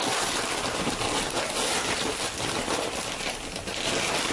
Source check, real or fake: fake